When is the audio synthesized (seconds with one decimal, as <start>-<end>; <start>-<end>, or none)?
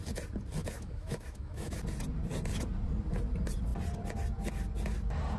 0.6-1.8